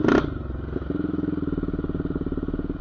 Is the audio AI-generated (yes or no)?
no